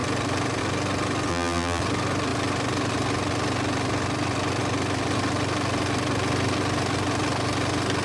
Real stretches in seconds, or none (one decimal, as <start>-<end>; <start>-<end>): 0.0-1.3; 1.8-8.0